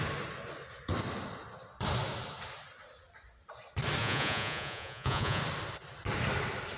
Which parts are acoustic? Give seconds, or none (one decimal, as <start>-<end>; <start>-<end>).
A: 0.0-4.0; 5.4-6.8

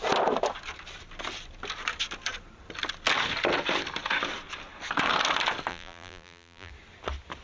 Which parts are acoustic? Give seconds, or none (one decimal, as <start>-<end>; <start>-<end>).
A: 0.0-5.7; 6.7-7.4

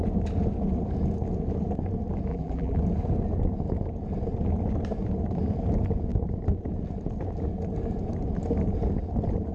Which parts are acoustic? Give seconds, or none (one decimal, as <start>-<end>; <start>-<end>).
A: 0.0-2.3; 2.8-9.5

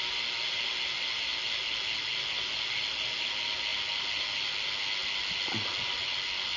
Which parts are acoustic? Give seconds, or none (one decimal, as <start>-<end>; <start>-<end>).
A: 0.0-6.6

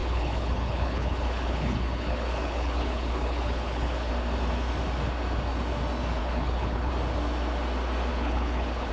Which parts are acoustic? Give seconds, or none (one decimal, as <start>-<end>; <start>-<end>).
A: 4.1-6.2; 6.9-8.1